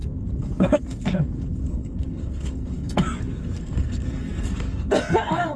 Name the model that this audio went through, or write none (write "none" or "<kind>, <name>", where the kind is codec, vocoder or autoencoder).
codec, SNAC